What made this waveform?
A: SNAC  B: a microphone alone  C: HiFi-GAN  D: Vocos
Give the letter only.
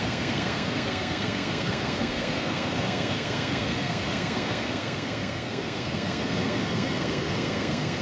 A